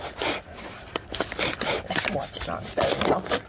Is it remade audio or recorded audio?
recorded